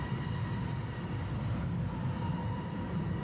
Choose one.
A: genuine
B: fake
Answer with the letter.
A